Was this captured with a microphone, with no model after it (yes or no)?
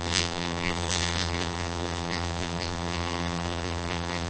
no